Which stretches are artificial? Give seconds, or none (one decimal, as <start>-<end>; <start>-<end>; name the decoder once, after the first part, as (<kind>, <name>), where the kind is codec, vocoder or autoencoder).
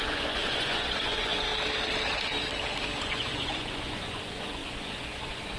0.0-1.5 (vocoder, Vocos); 3.0-5.6